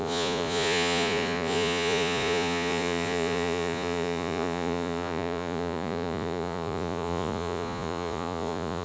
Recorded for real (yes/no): no